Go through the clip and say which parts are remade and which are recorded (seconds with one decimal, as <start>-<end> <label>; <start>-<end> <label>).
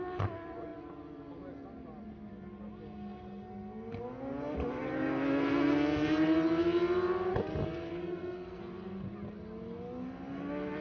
0.0-8.0 recorded; 8.0-8.6 remade; 8.6-10.8 recorded